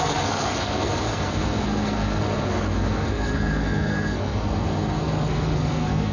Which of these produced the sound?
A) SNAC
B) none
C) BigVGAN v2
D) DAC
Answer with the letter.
A